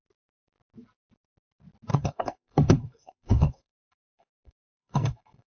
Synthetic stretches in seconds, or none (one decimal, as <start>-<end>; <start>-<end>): 1.9-5.5